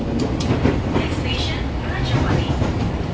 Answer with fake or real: real